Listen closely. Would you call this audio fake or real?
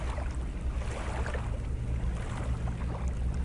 real